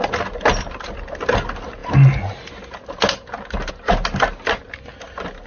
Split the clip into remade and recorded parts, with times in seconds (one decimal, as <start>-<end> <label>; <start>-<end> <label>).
0.0-5.5 recorded